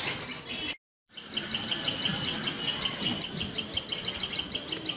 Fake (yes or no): no